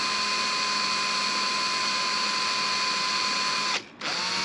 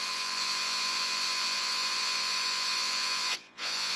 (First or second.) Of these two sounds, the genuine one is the first